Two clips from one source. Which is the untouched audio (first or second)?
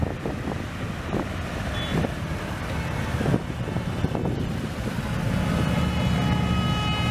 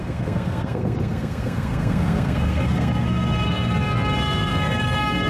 first